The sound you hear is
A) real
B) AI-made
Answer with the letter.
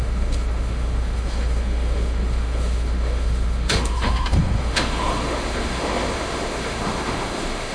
B